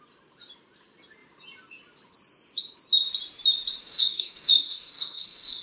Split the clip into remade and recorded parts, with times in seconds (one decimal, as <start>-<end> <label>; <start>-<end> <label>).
0.0-3.8 recorded; 3.8-5.6 remade